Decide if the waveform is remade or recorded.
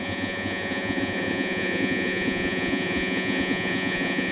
remade